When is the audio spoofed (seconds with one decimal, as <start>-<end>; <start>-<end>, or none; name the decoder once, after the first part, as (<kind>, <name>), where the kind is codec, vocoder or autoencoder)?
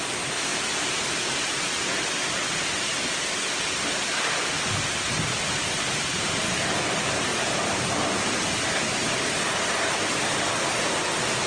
none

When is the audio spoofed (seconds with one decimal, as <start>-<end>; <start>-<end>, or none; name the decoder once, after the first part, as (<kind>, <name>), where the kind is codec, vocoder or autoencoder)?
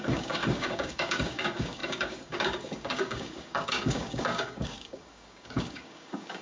0.0-6.4 (codec, DAC)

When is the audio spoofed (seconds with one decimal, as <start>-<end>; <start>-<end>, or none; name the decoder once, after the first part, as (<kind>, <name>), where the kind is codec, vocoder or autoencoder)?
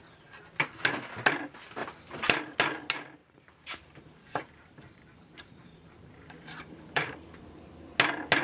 3.2-7.4 (vocoder, BigVGAN v2)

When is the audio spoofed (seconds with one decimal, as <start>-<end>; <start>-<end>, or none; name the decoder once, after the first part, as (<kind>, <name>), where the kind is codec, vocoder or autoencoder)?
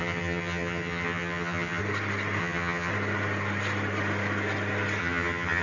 0.0-1.8 (vocoder, HiFi-GAN); 2.4-2.9; 5.0-5.6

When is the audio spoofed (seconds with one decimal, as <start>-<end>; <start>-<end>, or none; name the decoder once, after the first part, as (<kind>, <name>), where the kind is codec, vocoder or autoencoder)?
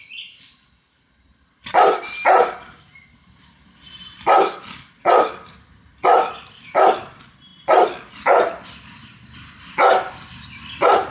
none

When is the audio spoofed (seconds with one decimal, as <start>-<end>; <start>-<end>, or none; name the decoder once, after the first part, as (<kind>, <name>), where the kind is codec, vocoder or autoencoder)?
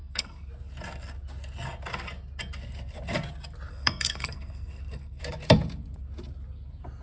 0.0-0.5 (codec, SNAC); 3.7-5.2